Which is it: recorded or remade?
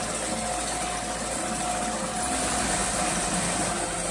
recorded